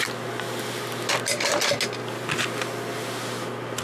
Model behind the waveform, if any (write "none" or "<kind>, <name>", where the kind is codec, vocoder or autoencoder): none